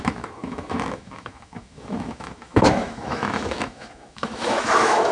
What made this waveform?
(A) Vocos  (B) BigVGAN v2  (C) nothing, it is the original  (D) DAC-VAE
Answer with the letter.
D